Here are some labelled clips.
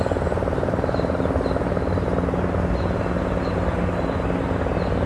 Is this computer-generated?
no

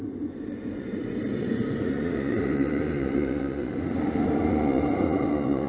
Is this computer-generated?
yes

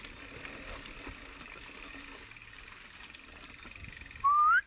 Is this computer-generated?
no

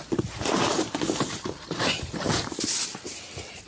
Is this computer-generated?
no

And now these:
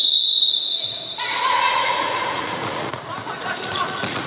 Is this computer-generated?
yes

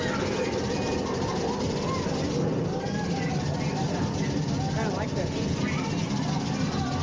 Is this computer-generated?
no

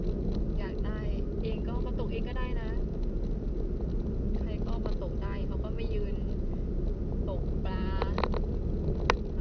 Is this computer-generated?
no